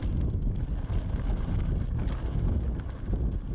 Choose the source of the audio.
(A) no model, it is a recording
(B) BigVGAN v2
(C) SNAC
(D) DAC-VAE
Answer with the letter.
A